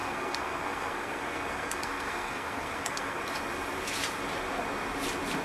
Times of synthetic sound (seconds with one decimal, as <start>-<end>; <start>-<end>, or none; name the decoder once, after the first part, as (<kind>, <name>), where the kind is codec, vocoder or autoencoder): 0.0-3.2 (codec, SNAC)